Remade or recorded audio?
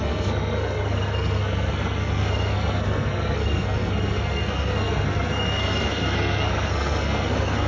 remade